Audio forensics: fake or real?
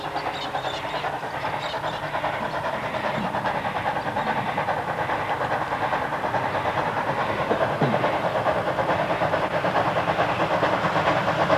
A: real